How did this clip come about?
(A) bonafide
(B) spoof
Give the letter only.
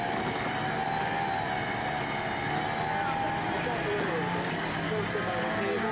A